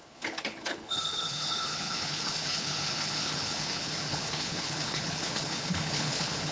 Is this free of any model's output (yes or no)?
no